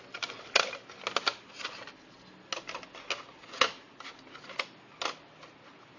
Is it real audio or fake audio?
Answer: real